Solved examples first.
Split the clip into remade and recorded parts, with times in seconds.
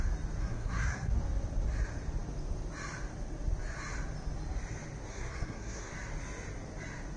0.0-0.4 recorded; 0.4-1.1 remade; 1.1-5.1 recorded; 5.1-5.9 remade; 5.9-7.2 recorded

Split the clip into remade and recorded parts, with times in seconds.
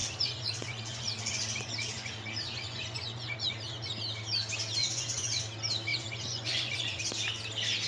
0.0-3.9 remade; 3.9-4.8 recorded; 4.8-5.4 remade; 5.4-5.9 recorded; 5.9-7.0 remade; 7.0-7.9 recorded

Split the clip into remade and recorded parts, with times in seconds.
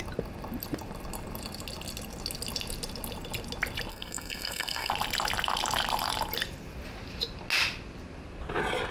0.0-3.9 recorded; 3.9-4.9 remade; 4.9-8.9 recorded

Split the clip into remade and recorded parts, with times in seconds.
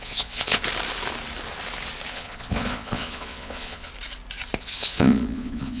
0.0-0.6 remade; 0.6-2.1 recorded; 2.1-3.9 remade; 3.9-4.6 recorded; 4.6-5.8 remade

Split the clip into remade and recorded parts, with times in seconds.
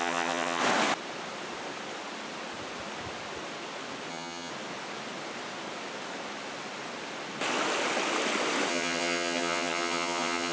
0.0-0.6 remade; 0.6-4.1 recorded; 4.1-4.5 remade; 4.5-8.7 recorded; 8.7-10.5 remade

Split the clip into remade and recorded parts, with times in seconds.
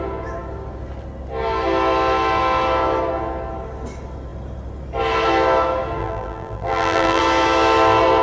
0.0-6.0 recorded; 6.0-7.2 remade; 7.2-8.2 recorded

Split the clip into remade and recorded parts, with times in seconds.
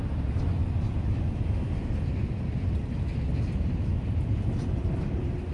0.0-5.5 recorded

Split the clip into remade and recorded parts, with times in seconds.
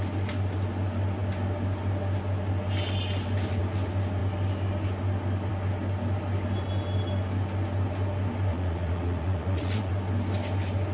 0.0-8.5 recorded; 8.5-9.9 remade; 9.9-10.9 recorded